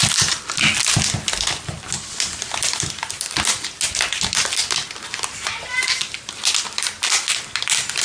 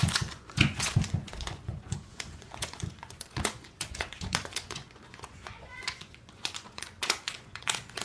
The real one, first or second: first